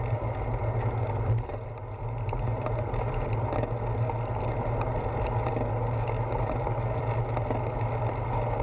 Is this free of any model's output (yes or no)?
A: yes